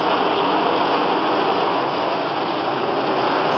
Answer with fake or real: fake